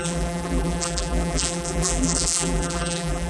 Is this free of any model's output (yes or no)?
no